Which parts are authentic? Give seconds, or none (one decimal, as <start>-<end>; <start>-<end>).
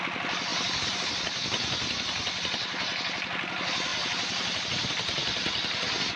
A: 0.0-0.5; 1.0-6.2